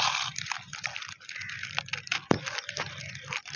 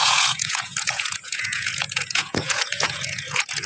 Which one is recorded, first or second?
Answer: first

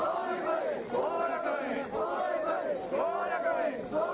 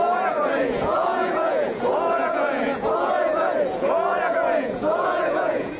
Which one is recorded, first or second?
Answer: first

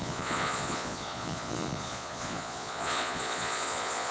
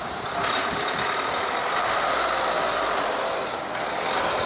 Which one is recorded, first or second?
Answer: second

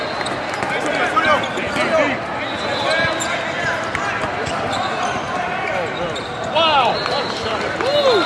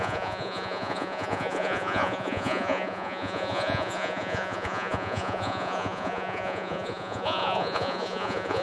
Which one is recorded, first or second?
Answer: first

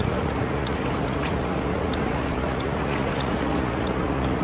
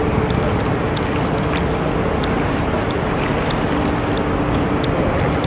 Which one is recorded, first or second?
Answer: second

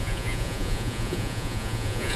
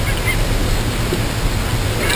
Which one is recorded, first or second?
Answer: second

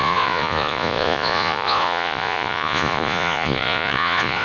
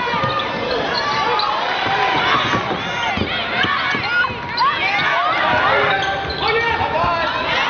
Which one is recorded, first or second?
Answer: second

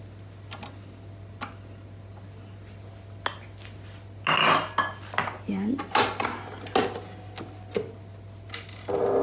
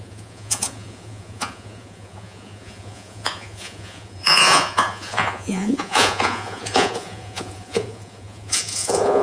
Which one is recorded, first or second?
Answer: first